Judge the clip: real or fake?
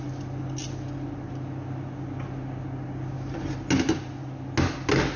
real